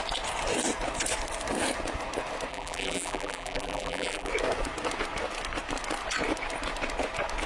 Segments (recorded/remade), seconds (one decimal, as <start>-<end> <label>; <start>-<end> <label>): 0.0-2.5 recorded; 2.5-4.3 remade; 4.3-7.5 recorded